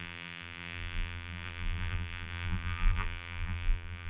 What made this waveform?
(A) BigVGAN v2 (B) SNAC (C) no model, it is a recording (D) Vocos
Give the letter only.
A